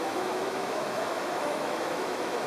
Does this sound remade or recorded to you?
remade